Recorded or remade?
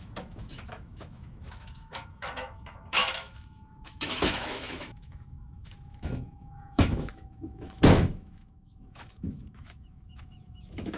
remade